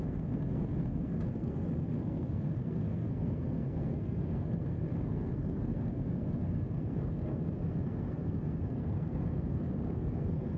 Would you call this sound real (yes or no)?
no